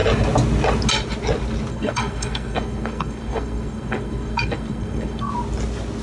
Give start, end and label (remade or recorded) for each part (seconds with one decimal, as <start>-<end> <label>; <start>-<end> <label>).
0.0-1.7 recorded; 1.7-5.3 remade; 5.3-6.0 recorded